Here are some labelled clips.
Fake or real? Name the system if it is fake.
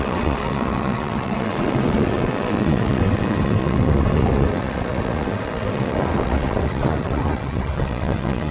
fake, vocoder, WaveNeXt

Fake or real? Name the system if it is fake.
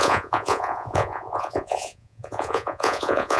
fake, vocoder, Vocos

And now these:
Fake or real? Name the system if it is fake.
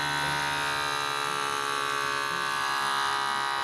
real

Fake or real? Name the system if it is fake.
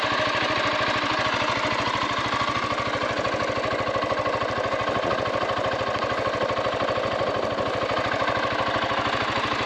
real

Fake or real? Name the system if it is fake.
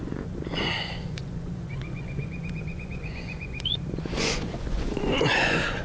fake, vocoder, Vocos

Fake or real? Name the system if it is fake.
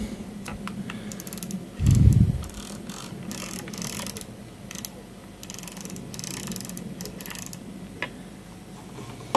real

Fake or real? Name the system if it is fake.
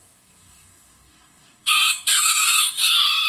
fake, codec, DAC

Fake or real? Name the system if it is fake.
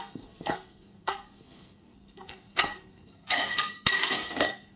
fake, codec, SNAC